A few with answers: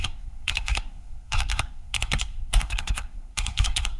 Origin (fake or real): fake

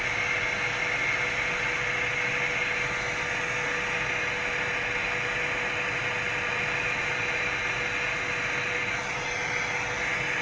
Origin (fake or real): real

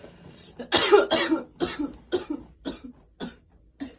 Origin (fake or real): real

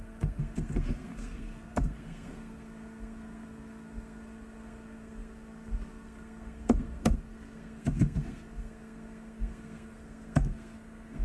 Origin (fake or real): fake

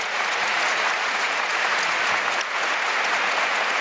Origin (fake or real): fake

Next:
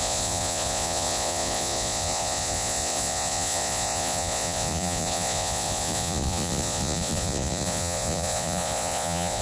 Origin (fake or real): fake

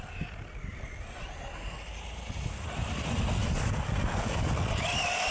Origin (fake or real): real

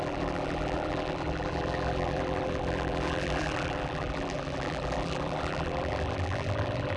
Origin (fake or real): fake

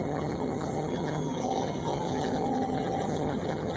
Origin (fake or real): fake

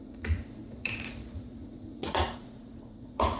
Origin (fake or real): fake